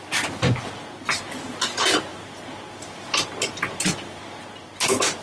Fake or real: real